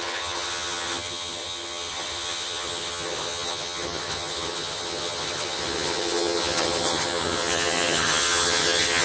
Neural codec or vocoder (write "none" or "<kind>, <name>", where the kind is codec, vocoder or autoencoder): vocoder, HiFi-GAN